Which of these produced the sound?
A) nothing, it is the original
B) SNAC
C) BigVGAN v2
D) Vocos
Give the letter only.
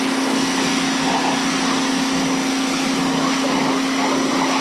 A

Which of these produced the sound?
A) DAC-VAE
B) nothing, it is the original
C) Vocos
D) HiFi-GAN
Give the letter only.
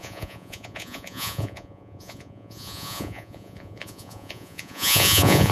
C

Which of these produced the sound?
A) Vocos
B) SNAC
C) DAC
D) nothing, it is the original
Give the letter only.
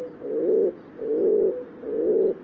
D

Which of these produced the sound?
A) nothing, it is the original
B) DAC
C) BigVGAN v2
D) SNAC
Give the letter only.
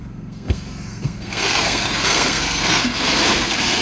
D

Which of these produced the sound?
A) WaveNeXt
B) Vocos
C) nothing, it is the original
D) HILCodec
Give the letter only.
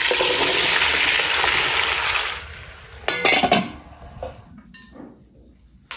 C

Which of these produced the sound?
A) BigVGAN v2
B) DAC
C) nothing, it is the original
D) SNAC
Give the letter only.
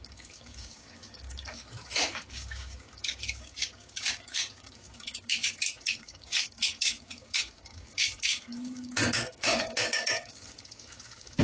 B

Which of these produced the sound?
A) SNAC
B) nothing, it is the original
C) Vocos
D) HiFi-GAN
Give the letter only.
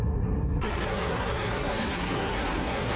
A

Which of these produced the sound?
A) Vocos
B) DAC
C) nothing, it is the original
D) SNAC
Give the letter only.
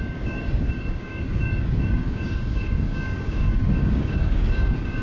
B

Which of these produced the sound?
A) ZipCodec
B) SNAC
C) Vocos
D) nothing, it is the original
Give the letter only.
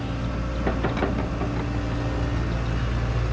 D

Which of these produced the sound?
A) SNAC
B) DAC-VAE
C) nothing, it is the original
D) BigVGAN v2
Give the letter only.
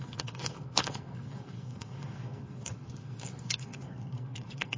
A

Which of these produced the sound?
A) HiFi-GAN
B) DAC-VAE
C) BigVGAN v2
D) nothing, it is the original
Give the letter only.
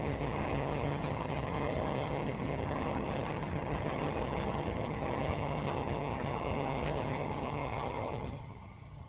A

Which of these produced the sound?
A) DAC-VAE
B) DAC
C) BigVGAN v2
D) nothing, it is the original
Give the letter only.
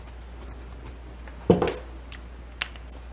D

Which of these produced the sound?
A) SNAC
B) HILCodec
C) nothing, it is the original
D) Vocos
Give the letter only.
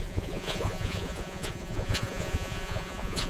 D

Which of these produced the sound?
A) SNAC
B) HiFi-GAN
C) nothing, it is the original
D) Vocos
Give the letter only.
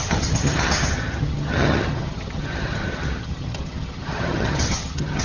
B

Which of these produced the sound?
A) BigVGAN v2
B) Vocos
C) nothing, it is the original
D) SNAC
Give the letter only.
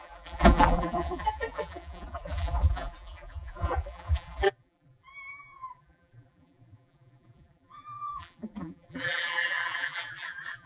A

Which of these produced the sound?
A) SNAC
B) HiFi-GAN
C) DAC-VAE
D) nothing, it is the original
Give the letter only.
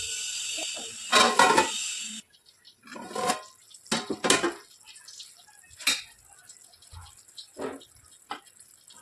D